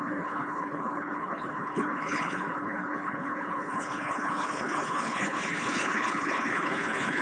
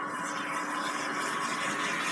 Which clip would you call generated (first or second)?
first